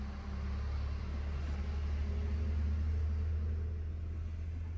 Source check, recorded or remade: recorded